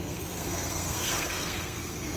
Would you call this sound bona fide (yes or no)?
no